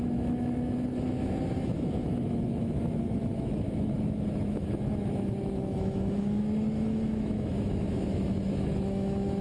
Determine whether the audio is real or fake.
fake